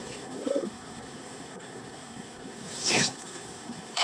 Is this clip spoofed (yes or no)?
yes